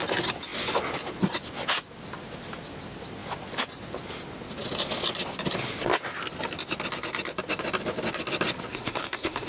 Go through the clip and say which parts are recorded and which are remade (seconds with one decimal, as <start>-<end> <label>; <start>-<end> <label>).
0.0-8.7 recorded; 8.7-9.5 remade